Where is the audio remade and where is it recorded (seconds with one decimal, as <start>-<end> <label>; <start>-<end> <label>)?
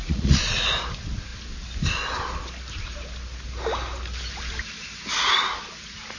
0.0-0.7 remade; 0.7-6.2 recorded